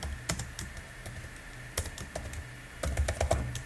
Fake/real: real